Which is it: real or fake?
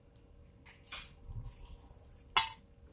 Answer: real